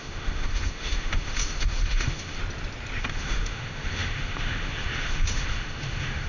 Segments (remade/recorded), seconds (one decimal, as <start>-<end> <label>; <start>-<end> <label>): 0.0-2.4 remade; 2.4-3.0 recorded; 3.0-6.3 remade